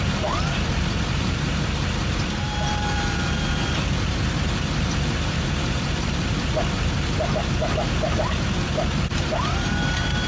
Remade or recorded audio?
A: remade